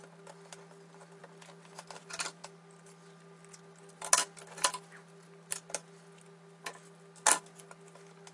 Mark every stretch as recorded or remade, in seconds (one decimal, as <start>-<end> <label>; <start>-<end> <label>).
0.0-8.3 recorded